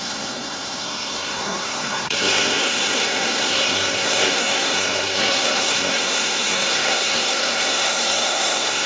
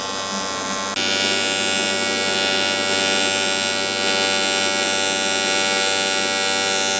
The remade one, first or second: first